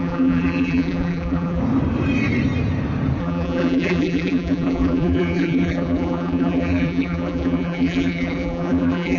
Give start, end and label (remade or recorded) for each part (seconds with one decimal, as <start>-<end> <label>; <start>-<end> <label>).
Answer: 0.0-1.6 remade; 1.6-3.2 recorded; 3.2-9.2 remade